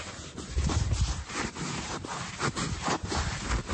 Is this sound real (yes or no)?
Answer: no